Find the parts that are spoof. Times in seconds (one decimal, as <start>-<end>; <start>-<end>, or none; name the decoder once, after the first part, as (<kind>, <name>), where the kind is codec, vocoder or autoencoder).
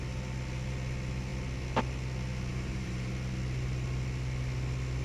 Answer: 2.5-3.1 (vocoder, BigVGAN v2)